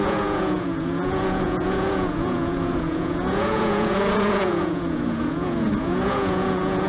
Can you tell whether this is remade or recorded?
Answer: remade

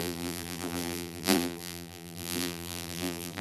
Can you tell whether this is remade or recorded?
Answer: remade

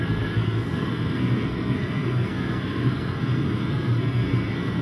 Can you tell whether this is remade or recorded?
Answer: remade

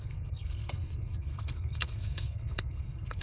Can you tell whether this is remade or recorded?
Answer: remade